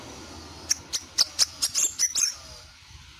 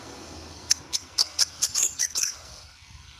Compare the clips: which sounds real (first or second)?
first